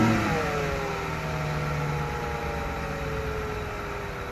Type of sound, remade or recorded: recorded